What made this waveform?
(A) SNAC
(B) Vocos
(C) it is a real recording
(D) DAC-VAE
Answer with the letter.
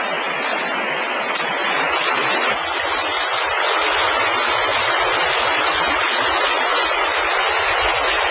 C